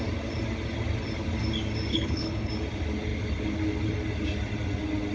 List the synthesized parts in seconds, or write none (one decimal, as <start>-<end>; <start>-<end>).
1.9-2.5